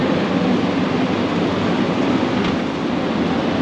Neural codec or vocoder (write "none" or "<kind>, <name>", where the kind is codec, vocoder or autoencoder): none